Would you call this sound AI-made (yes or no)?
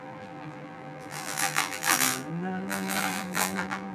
yes